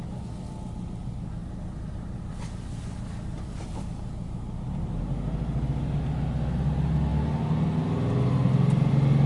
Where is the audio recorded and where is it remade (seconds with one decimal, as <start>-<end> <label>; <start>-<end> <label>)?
0.0-1.4 recorded; 1.4-3.8 remade; 3.8-9.3 recorded